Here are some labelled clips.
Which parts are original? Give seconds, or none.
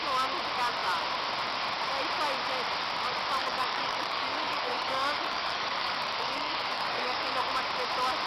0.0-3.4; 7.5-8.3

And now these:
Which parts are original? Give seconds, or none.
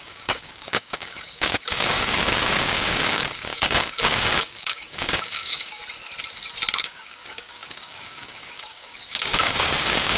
5.8-6.8